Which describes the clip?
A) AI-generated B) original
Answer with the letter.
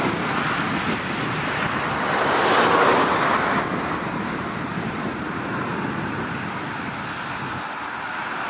B